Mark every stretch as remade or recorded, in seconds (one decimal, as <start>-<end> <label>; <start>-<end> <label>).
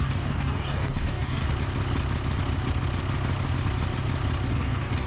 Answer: 0.0-1.4 remade; 1.4-4.5 recorded; 4.5-5.1 remade